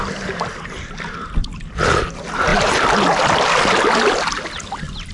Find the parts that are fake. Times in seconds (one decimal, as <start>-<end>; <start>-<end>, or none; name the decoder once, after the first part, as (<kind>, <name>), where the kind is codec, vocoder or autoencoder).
none